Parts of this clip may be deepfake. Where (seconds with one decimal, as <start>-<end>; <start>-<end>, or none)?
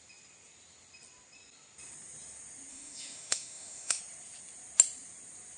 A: 2.7-4.0